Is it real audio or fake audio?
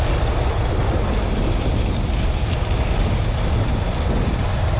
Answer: fake